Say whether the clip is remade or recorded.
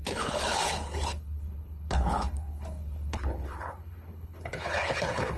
remade